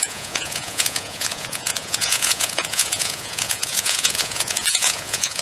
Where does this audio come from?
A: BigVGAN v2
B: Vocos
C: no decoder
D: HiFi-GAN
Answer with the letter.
B